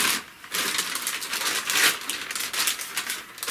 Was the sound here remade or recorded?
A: recorded